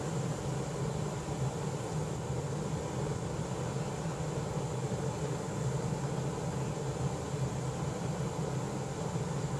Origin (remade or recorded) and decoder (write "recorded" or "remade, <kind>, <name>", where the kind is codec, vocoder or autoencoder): recorded